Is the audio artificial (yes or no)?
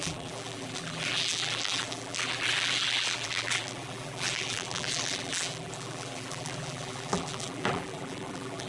yes